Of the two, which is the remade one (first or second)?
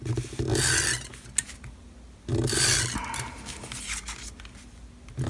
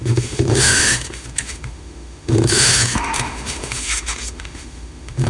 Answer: second